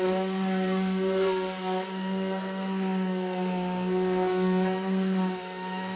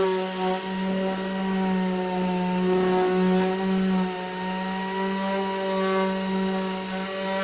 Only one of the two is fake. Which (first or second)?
first